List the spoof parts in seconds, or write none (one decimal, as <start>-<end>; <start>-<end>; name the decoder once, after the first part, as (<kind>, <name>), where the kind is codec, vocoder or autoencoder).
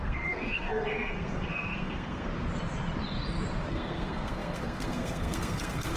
0.0-2.3 (codec, SNAC); 3.7-6.0